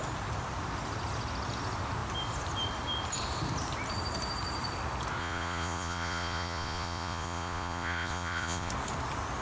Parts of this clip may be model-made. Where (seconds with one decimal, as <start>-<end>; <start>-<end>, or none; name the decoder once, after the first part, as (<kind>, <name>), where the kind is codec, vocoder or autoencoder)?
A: 5.2-8.7 (vocoder, Vocos)